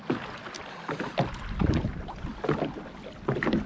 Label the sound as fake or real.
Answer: real